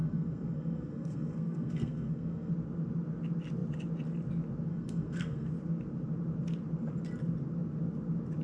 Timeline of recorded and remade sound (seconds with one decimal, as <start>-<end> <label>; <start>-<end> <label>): 0.0-2.5 remade; 2.5-4.7 recorded; 4.7-5.5 remade; 5.5-8.4 recorded